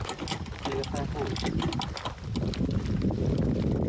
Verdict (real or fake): real